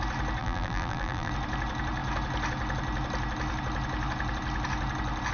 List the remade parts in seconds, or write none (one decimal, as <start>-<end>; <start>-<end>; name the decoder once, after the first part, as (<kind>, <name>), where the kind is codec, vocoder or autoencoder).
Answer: 0.4-1.3 (vocoder, BigVGAN v2)